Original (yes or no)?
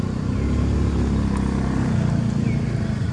yes